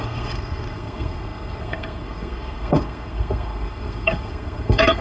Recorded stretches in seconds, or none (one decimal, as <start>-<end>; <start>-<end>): none